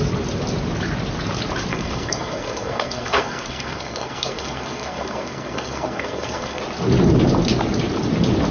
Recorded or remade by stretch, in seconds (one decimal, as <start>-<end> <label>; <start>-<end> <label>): 0.0-1.7 recorded; 1.7-6.6 remade; 6.6-8.5 recorded